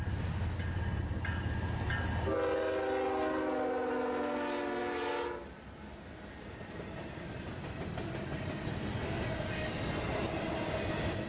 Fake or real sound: real